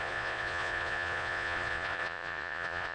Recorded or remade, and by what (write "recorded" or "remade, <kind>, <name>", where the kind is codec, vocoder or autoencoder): remade, vocoder, Vocos